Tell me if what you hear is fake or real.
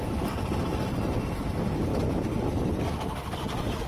real